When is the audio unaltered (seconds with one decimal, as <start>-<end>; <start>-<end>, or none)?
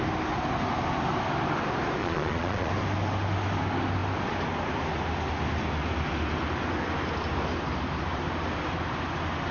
0.0-2.0; 2.7-9.5